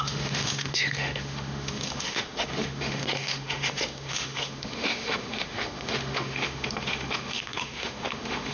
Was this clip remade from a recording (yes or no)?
yes